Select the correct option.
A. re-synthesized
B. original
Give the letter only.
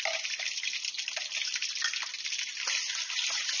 B